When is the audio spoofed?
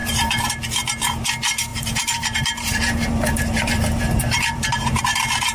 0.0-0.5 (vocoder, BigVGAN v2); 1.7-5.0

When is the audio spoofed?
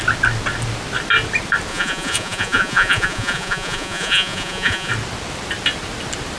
1.7-4.9 (vocoder, Vocos)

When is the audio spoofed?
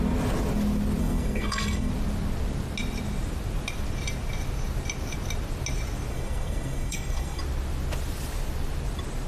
1.0-1.9 (codec, SNAC); 6.1-7.4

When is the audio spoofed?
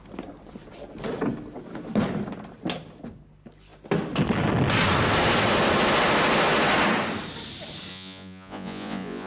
7.9-9.3 (vocoder, Vocos)